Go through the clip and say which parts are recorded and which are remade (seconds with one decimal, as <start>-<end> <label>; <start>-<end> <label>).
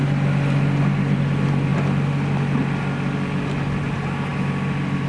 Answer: 0.0-5.1 recorded